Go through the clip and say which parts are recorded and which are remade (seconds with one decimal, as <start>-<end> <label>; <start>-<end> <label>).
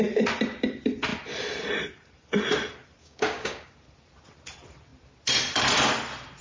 0.0-3.0 recorded; 3.0-3.7 remade; 3.7-6.4 recorded